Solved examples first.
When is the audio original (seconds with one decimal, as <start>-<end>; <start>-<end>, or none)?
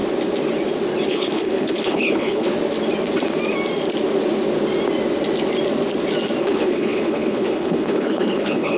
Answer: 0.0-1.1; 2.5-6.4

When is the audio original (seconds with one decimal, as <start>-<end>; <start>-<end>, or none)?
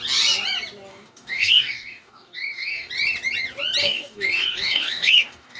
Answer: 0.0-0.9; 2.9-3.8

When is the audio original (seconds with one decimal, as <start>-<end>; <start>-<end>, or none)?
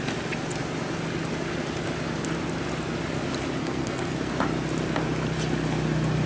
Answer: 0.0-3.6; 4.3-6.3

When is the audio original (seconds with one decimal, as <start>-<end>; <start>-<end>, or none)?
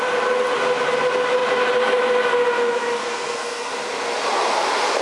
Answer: 0.0-3.0; 3.7-5.0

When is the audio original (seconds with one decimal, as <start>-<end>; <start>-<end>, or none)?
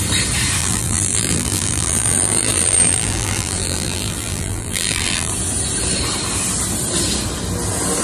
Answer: 0.0-0.6; 5.3-8.0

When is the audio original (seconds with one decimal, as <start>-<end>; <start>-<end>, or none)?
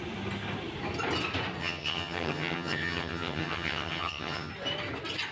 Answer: 0.0-1.6; 4.5-5.3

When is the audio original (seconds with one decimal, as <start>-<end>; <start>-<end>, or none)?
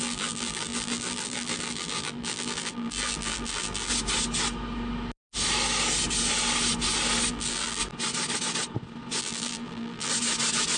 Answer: 3.9-7.3; 7.8-9.2; 10.1-10.8